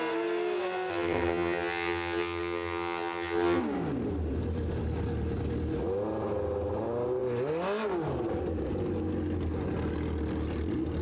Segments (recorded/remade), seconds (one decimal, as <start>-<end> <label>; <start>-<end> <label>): 0.0-0.9 recorded; 0.9-3.6 remade; 3.6-11.0 recorded